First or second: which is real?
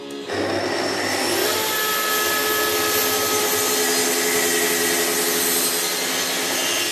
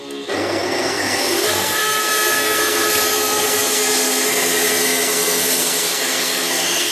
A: first